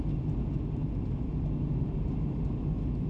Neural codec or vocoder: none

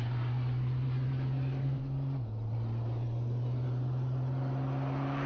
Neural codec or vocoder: none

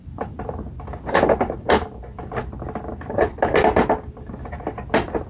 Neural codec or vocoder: none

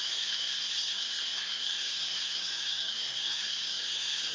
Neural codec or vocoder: codec, SNAC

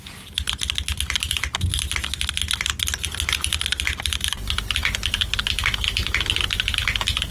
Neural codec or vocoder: none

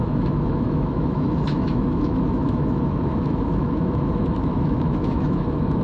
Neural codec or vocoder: autoencoder, DAC-VAE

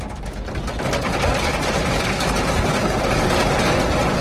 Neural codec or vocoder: none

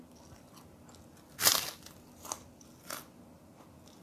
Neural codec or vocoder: none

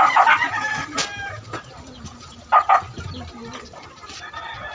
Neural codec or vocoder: none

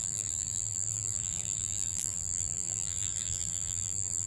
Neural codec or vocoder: vocoder, BigVGAN v2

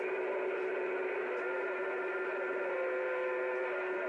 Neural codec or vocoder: none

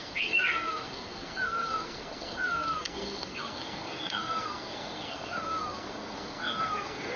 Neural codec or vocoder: codec, SNAC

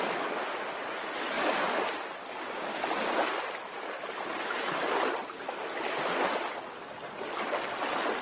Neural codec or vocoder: none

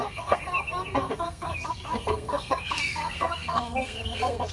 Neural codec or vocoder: codec, SNAC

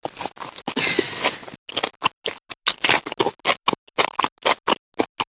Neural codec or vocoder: none